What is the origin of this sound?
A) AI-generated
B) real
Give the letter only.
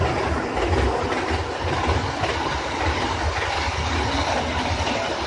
B